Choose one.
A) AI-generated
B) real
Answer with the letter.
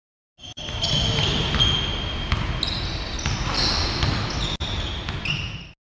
B